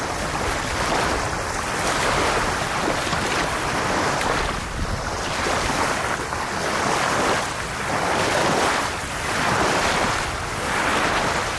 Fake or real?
real